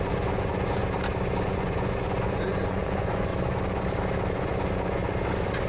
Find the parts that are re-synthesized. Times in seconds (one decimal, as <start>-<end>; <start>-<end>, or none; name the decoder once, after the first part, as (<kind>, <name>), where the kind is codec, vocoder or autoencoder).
0.0-0.8 (vocoder, Vocos); 1.4-3.3; 4.3-5.0